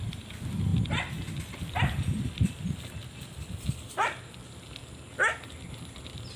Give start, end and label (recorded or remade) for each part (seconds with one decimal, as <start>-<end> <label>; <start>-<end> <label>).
0.0-6.4 recorded